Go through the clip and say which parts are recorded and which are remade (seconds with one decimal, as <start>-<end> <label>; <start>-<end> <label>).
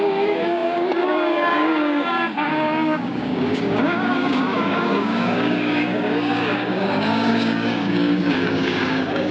0.0-9.3 remade